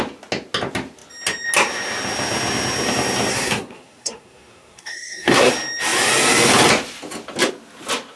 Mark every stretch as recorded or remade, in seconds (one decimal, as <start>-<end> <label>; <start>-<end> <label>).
0.0-3.3 recorded; 3.3-5.5 remade; 5.5-8.2 recorded